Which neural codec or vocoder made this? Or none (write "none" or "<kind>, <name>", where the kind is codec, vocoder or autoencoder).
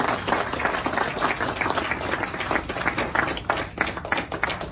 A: none